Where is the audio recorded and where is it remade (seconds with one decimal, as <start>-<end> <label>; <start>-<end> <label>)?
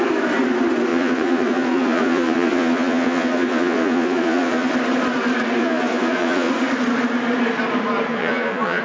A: 0.0-0.9 recorded; 0.9-4.7 remade; 4.7-5.6 recorded; 5.6-6.5 remade; 6.5-8.1 recorded; 8.1-8.8 remade